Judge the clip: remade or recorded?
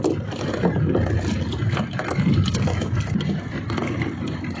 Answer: recorded